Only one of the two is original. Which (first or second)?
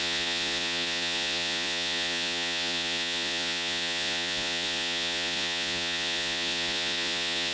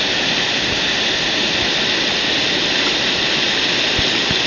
second